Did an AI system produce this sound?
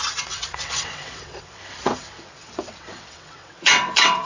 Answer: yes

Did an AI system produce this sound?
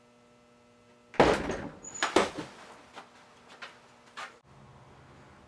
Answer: no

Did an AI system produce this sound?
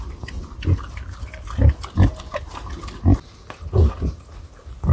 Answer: no